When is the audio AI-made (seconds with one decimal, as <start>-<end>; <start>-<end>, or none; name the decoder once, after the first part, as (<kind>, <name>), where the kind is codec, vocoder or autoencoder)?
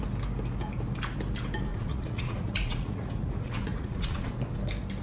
1.7-4.3 (vocoder, Vocos)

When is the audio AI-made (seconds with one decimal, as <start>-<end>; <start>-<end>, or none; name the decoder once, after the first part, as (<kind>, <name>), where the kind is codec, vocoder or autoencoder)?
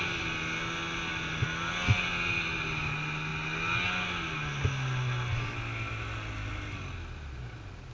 none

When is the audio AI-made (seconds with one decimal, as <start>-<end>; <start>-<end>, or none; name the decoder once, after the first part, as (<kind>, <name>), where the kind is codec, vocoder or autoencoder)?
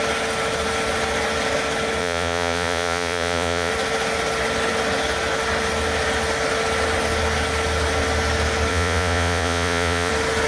2.0-3.7 (vocoder, Vocos); 8.7-10.1